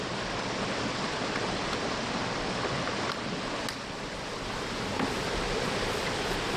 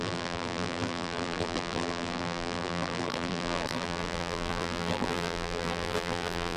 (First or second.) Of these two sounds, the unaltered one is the first